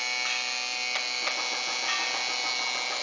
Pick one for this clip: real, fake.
real